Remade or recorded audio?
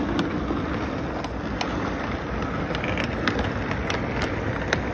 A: recorded